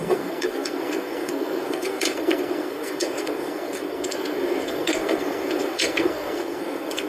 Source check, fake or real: fake